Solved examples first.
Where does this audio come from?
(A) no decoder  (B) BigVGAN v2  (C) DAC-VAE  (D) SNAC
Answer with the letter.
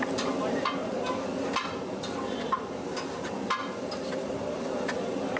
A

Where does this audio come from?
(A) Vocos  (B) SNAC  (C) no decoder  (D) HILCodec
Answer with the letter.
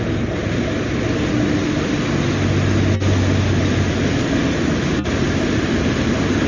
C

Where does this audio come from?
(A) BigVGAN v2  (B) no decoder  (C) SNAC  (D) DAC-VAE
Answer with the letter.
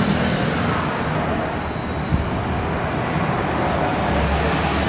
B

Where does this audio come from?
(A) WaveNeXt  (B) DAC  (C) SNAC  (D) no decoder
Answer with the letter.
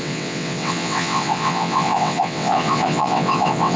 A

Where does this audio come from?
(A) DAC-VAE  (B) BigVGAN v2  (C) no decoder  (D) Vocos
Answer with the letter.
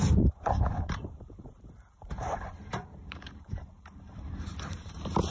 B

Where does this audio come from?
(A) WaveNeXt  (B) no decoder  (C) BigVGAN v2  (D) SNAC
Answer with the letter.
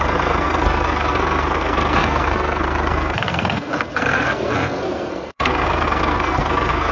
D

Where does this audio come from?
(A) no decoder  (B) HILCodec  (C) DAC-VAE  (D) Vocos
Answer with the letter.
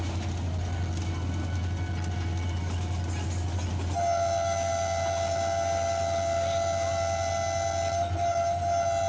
A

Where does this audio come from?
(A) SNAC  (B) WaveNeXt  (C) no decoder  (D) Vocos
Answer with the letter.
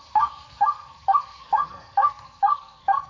A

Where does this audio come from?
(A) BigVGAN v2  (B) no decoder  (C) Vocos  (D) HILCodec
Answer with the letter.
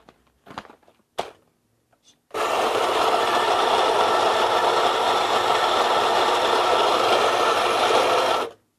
B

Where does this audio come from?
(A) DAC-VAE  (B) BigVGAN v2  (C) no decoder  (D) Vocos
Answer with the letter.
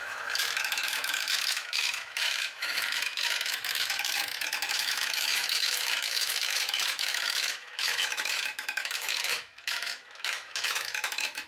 A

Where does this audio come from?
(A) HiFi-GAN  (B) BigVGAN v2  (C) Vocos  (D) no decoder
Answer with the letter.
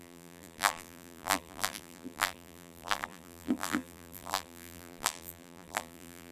B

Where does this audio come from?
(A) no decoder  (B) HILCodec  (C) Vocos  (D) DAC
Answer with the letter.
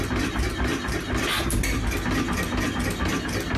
A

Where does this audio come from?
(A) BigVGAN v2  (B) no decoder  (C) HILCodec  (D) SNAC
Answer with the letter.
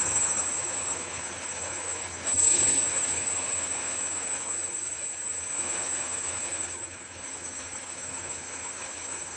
C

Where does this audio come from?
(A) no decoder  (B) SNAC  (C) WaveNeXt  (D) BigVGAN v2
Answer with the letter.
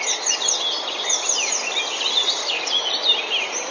A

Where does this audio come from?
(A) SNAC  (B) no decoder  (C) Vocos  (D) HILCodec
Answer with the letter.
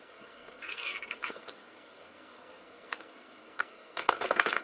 A